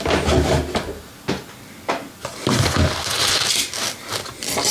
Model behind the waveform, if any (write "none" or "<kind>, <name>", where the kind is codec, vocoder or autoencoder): none